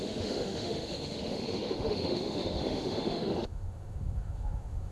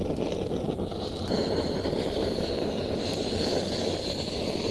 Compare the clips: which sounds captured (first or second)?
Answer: second